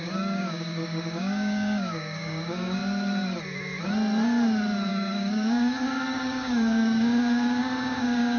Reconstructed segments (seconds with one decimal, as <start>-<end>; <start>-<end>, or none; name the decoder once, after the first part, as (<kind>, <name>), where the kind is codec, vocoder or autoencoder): 0.0-2.8 (codec, DAC); 4.9-8.4